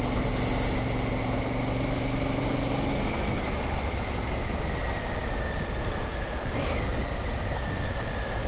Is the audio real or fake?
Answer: real